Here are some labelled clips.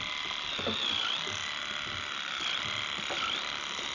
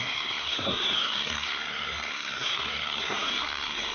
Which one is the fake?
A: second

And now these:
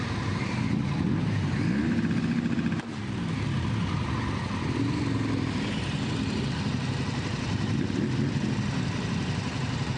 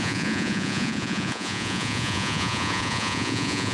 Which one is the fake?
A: second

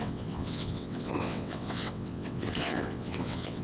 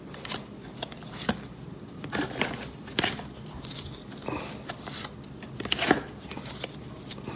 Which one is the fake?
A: first